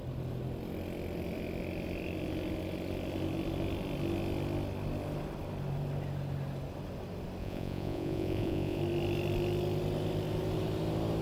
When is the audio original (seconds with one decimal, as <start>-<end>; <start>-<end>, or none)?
0.0-7.4; 8.8-11.2